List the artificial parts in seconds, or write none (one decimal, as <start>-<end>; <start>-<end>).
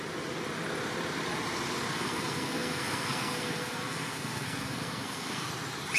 1.9-5.5